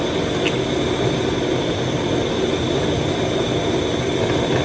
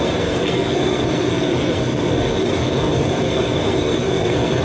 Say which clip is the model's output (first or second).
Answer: second